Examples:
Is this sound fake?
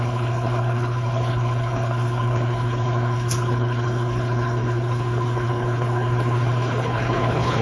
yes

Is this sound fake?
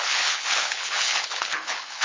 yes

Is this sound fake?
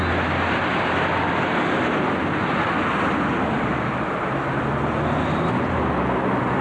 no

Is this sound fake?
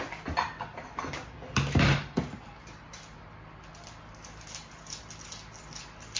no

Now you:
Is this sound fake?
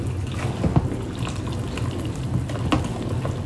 no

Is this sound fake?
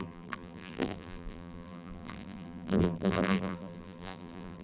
yes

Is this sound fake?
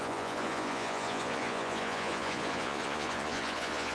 yes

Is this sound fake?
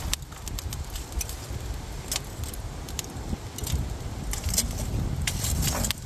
no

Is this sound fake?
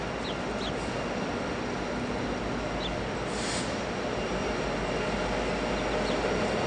no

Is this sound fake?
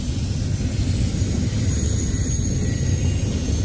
no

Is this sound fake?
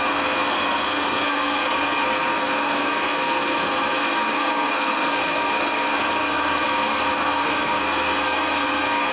yes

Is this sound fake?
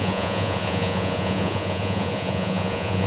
yes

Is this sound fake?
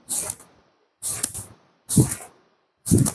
no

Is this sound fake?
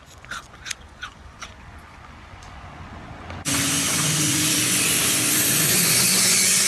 yes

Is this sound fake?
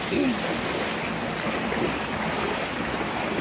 no